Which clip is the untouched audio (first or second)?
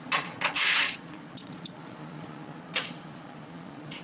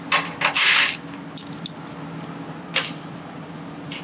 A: second